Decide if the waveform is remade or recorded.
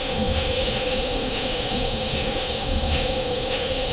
remade